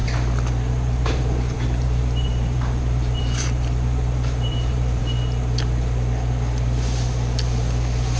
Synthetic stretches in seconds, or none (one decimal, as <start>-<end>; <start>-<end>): 0.7-5.0

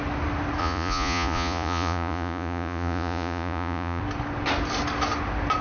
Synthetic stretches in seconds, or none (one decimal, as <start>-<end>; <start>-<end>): 0.6-4.0

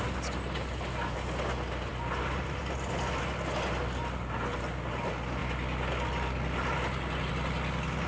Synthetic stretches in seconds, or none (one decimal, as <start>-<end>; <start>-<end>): none

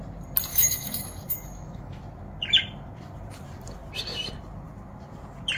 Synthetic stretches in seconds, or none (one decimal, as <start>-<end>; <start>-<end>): 0.5-2.0

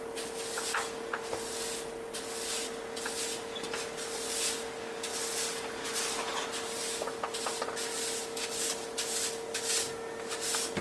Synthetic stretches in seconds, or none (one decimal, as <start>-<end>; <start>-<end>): none

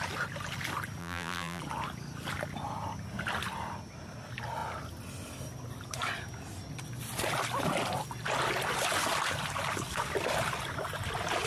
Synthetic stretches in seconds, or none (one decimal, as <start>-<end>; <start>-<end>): 1.0-1.6

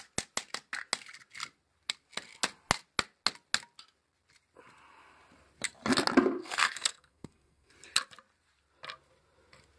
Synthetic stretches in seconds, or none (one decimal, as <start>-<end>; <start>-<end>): 6.4-7.7